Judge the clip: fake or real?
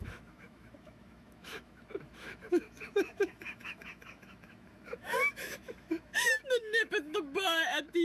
fake